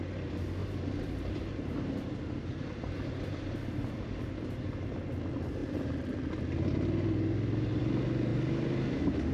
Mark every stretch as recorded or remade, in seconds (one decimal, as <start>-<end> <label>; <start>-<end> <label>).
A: 0.0-0.6 recorded; 0.6-5.0 remade; 5.0-9.3 recorded